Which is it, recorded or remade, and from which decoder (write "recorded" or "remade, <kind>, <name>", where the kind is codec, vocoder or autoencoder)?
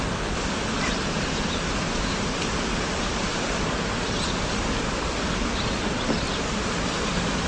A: recorded